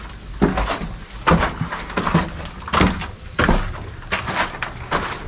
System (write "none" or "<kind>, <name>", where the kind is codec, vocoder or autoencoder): none